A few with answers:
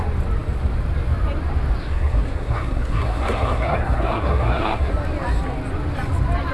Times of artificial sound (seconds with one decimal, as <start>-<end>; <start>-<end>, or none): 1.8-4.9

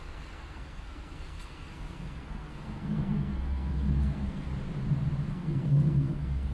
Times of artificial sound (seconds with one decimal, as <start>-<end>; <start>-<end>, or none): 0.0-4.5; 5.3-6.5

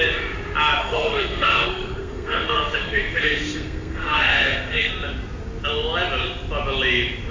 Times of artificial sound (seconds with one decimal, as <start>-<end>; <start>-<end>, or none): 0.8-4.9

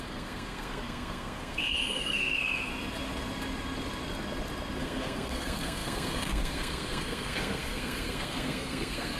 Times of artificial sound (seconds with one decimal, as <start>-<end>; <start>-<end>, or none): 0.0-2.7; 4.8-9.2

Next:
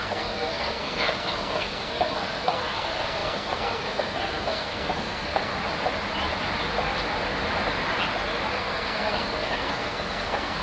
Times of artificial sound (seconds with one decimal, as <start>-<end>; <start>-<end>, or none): 0.0-5.5; 8.5-10.6

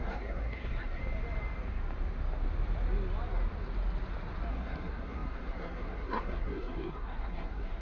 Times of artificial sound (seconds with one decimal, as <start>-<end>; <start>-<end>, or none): 0.0-1.0; 4.5-7.8

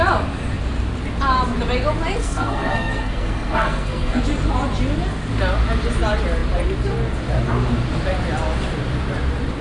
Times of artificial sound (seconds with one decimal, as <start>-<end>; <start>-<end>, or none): 2.2-4.2

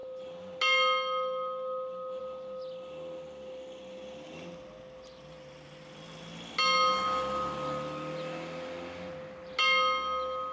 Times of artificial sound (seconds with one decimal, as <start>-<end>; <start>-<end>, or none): none